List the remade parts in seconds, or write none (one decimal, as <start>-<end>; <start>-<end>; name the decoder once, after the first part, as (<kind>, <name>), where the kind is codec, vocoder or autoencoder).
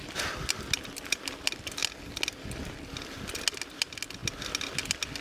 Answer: none